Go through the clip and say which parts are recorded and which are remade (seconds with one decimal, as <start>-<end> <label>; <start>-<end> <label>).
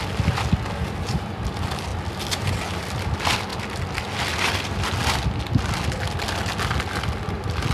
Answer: 0.0-7.7 recorded